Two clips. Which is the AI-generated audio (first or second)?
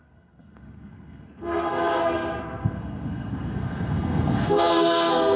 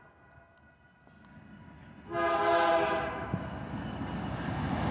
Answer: first